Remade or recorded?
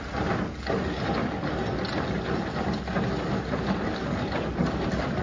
recorded